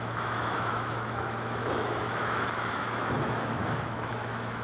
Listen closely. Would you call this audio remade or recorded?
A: remade